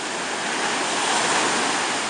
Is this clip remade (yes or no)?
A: no